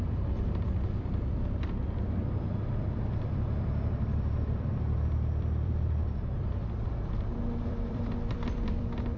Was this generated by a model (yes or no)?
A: yes